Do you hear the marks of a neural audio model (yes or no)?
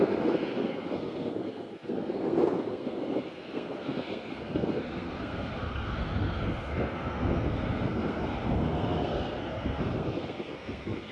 yes